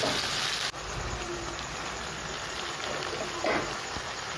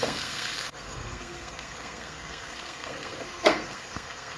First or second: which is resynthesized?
second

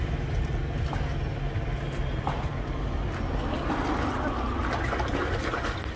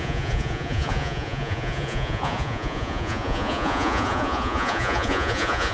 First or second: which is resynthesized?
second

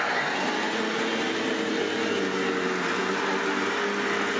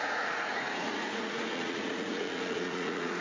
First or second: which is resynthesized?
second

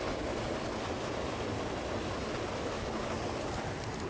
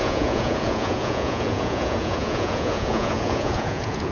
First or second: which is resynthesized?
second